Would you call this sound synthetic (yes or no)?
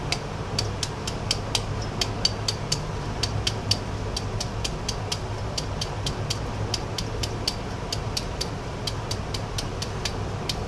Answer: no